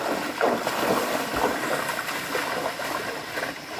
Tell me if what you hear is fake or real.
real